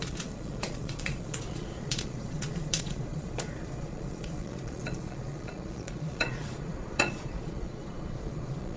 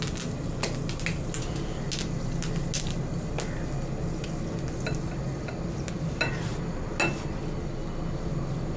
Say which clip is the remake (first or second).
first